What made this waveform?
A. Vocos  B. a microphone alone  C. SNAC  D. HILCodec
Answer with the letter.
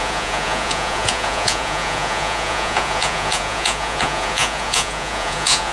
A